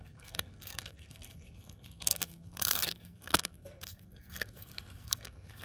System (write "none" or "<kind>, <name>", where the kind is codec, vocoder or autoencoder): codec, SNAC